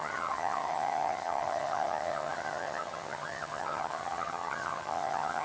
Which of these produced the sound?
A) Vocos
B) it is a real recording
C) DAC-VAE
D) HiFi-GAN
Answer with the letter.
D